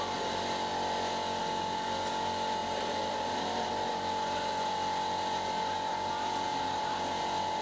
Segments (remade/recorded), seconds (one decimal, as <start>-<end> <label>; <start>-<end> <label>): 0.0-2.6 recorded; 2.6-3.7 remade; 3.7-6.5 recorded; 6.5-7.0 remade; 7.0-7.6 recorded